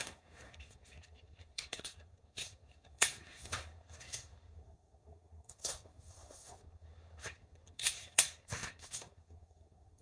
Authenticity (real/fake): fake